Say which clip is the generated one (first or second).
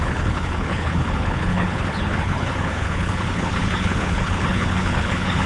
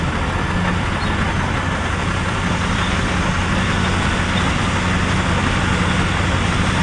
first